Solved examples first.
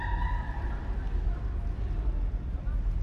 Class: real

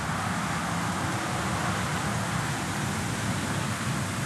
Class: real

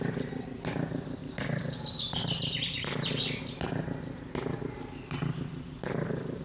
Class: real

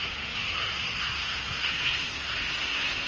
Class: fake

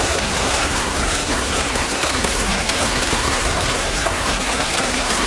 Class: fake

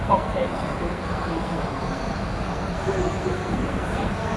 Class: fake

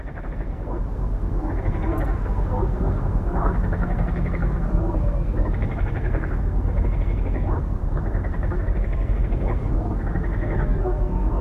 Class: fake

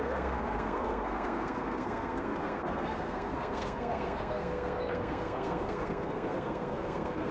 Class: fake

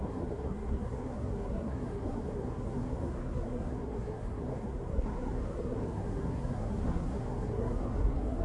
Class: fake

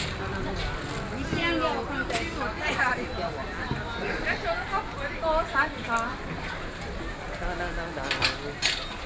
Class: real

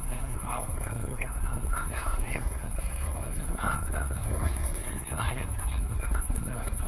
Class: fake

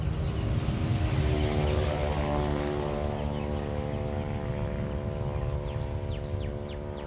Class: real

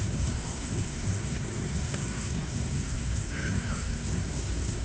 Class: fake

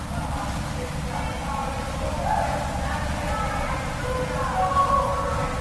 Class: real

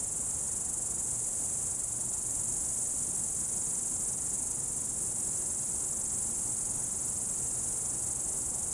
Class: real